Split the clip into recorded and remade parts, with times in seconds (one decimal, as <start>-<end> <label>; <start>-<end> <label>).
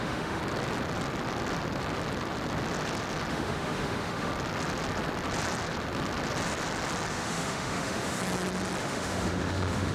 0.0-0.4 remade; 0.4-3.3 recorded; 3.3-4.3 remade; 4.3-7.1 recorded; 7.1-8.2 remade; 8.2-8.8 recorded; 8.8-9.9 remade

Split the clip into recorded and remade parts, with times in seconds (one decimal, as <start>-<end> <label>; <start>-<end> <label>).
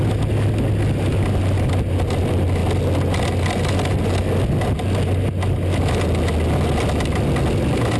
0.0-8.0 recorded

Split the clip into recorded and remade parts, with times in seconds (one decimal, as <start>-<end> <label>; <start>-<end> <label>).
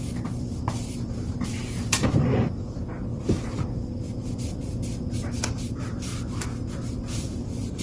0.0-2.9 remade; 2.9-3.6 recorded; 3.6-6.1 remade; 6.1-6.7 recorded; 6.7-7.8 remade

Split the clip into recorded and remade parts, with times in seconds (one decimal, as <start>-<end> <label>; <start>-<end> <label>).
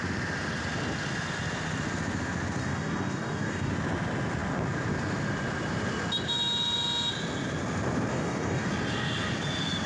0.0-2.6 recorded; 2.6-3.7 remade; 3.7-8.1 recorded; 8.1-8.7 remade; 8.7-9.9 recorded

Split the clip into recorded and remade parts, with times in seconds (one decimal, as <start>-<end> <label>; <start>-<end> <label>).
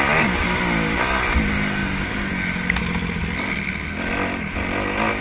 0.0-5.2 recorded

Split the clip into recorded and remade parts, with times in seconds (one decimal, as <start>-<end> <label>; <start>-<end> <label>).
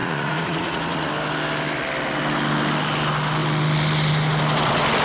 0.0-1.1 remade; 1.1-5.0 recorded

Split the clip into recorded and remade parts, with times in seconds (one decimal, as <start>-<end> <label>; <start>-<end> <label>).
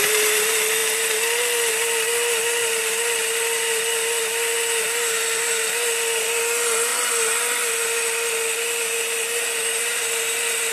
0.0-10.7 recorded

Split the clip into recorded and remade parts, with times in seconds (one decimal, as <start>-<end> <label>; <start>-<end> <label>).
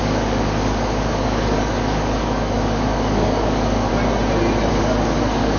0.0-3.9 remade; 3.9-4.7 recorded; 4.7-5.6 remade